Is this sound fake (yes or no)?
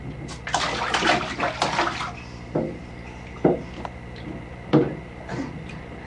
no